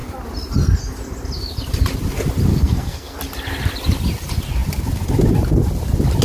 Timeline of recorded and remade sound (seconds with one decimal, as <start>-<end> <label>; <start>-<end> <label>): 0.0-2.5 recorded; 2.5-3.2 remade; 3.2-6.2 recorded